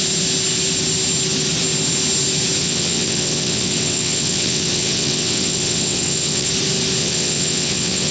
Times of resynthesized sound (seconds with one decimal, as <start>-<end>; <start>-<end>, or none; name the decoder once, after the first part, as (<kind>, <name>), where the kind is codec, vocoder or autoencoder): 2.6-6.5 (vocoder, WaveNeXt); 7.0-8.1